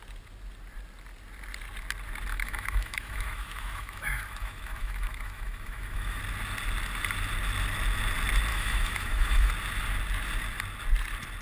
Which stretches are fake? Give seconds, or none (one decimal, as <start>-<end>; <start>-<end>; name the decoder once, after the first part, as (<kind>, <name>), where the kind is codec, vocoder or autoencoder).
2.3-6.2 (autoencoder, DAC-VAE); 8.5-9.5

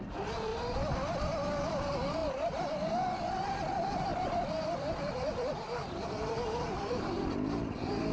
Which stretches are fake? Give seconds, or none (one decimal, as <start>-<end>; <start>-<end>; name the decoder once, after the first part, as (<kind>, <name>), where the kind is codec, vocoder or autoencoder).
0.5-1.7 (vocoder, BigVGAN v2); 2.2-3.5; 4.1-7.3